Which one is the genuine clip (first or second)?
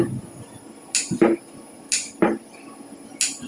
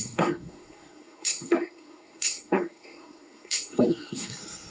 first